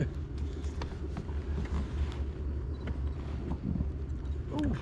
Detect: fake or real real